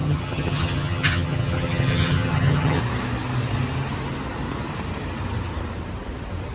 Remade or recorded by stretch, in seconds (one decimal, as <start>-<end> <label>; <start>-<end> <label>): 0.0-2.8 remade; 2.8-6.5 recorded